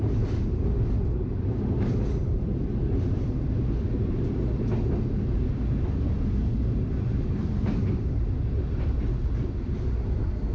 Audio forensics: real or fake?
real